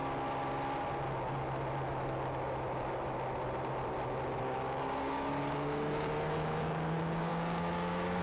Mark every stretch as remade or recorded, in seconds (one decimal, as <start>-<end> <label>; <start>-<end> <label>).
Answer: 0.0-4.4 recorded; 4.4-8.2 remade